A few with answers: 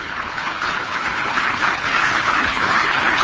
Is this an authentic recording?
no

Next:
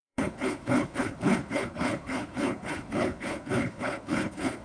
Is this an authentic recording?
no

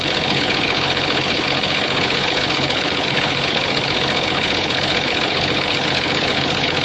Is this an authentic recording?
no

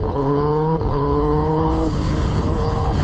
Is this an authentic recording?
no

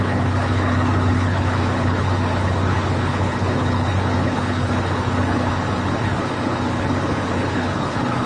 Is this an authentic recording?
no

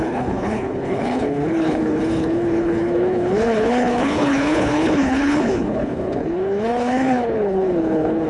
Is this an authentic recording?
no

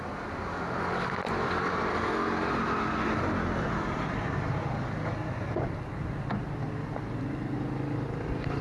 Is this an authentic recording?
yes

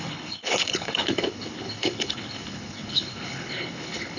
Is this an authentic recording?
no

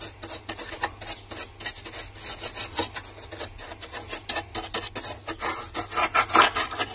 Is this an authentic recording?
yes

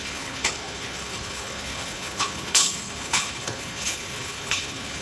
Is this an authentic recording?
no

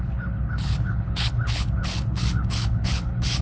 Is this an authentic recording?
no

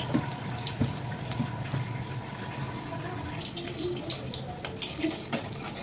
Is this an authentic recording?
yes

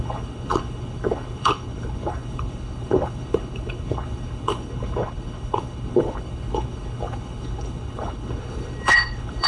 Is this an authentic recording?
no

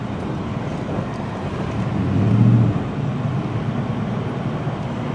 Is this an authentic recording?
yes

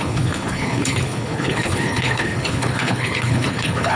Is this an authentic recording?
no